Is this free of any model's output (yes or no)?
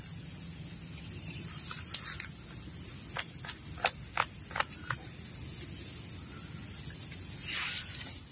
yes